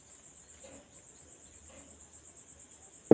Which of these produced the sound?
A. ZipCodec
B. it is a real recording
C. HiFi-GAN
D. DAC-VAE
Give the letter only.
B